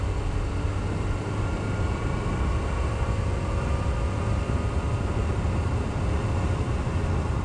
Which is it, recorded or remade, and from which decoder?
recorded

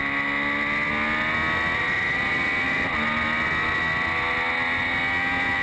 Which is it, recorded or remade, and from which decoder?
recorded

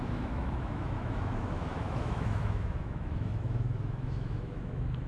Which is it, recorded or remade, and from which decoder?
remade, autoencoder, DAC-VAE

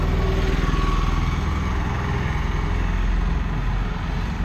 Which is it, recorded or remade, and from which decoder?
recorded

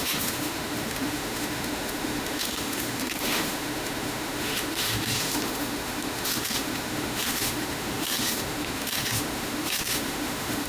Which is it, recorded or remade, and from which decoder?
remade, autoencoder, DAC-VAE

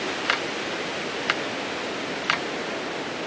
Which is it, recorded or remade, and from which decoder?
recorded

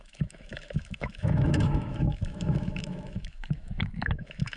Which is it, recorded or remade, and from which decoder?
remade, autoencoder, DAC-VAE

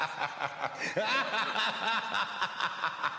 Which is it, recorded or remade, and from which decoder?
recorded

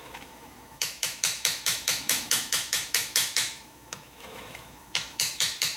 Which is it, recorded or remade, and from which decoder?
remade, autoencoder, DAC-VAE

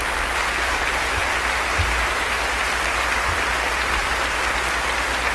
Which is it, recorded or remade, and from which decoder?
recorded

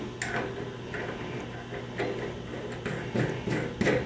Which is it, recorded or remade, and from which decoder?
recorded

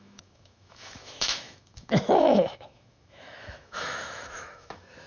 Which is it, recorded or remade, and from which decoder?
remade, autoencoder, DAC-VAE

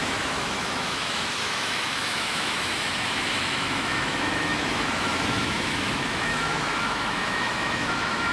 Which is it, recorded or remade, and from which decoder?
remade, autoencoder, DAC-VAE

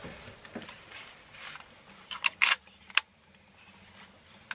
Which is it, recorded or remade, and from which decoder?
recorded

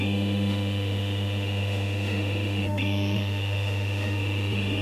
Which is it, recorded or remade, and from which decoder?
remade, autoencoder, DAC-VAE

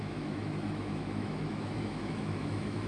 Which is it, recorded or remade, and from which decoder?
remade, autoencoder, DAC-VAE